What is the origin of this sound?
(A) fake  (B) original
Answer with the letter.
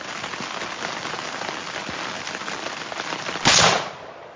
B